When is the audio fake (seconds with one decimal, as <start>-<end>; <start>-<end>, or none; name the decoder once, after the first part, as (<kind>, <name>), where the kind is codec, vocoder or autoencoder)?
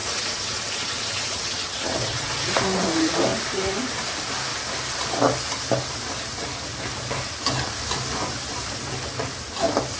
0.0-2.6 (vocoder, WaveNeXt)